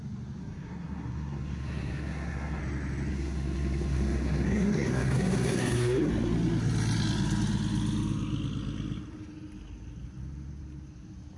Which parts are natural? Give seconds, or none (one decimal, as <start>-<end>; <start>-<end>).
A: 0.0-0.4; 2.6-3.1; 6.1-11.4